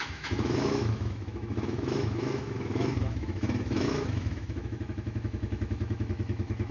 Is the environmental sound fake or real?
fake